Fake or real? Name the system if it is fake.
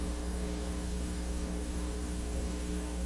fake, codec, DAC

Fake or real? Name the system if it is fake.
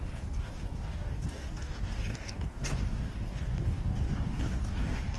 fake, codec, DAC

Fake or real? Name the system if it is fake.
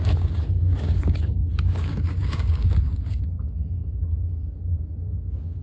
fake, codec, DAC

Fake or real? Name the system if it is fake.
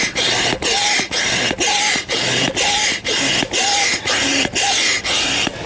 real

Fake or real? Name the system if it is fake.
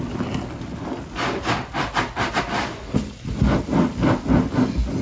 real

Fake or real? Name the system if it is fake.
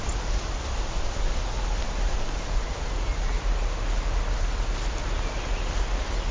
real